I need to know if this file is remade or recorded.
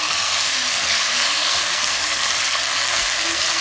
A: remade